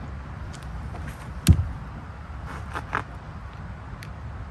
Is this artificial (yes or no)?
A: no